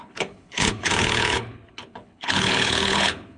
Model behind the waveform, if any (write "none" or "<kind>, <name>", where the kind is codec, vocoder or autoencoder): codec, HILCodec